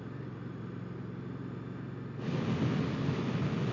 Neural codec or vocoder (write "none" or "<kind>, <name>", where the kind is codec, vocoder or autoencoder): none